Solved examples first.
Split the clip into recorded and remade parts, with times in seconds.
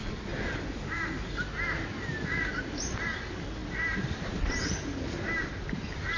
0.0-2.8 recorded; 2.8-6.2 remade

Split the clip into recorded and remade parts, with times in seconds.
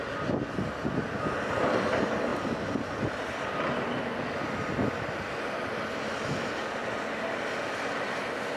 0.0-8.6 recorded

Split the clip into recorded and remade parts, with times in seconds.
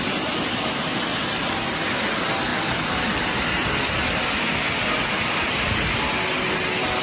0.0-7.0 recorded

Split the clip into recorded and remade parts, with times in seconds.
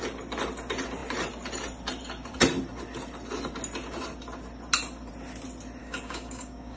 0.0-5.8 recorded; 5.8-6.8 remade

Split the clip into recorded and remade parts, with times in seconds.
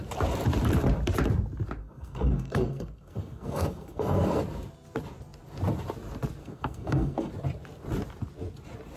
0.0-1.8 recorded; 1.8-4.4 remade; 4.4-6.4 recorded; 6.4-7.3 remade; 7.3-9.0 recorded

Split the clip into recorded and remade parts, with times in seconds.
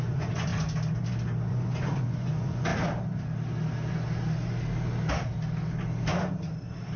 0.0-0.5 remade; 0.5-1.5 recorded; 1.5-2.7 remade; 2.7-7.0 recorded